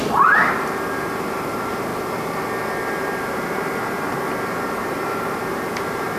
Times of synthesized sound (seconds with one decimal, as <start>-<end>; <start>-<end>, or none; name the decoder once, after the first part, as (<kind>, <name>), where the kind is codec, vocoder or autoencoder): 0.0-0.4 (vocoder, BigVGAN v2); 0.9-1.9; 2.9-6.2